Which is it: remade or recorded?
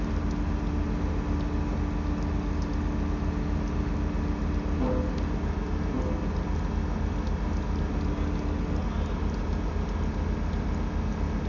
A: recorded